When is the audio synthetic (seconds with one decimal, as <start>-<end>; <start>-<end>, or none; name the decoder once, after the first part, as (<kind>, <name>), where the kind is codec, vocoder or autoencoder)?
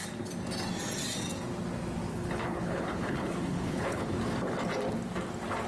2.1-4.2 (codec, HILCodec)